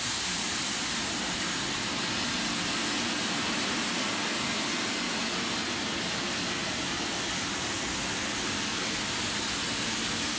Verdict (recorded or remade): recorded